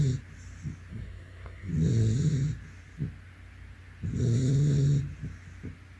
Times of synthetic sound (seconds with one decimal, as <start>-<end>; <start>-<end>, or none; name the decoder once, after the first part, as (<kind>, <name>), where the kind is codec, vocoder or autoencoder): 0.9-1.7 (codec, SNAC)